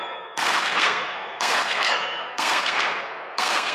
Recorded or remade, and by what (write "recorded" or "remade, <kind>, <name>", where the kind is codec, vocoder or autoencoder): remade, codec, SNAC